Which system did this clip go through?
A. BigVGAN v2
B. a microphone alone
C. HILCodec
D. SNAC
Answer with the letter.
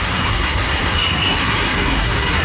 D